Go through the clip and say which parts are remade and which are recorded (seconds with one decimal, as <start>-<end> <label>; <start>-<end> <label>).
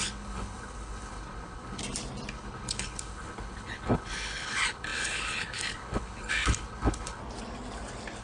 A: 0.0-1.8 remade; 1.8-2.3 recorded; 2.3-7.2 remade; 7.2-8.2 recorded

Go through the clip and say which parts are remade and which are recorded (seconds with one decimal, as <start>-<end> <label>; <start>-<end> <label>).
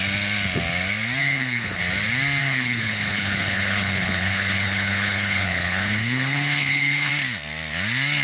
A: 0.0-1.2 recorded; 1.2-1.8 remade; 1.8-2.4 recorded; 2.4-7.1 remade; 7.1-8.2 recorded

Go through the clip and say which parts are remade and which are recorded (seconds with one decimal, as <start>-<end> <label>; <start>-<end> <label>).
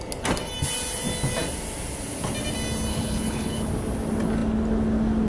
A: 0.0-2.9 recorded; 2.9-3.7 remade; 3.7-5.3 recorded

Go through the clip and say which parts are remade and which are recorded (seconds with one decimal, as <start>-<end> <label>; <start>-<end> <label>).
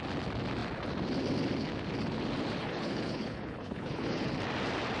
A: 0.0-2.6 recorded; 2.6-4.3 remade; 4.3-5.0 recorded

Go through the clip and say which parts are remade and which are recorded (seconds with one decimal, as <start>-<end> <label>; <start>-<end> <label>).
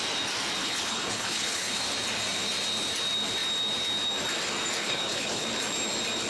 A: 0.0-0.6 recorded; 0.6-1.8 remade; 1.8-4.8 recorded; 4.8-5.5 remade; 5.5-6.3 recorded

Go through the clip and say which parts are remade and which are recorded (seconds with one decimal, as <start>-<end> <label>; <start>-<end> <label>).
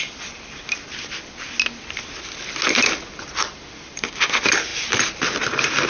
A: 0.0-5.9 recorded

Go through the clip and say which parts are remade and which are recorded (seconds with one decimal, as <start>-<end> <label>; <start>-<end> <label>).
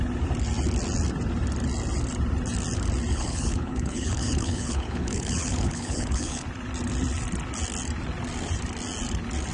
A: 0.0-3.1 recorded; 3.1-6.4 remade; 6.4-9.5 recorded